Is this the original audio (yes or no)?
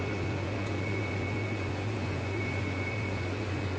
no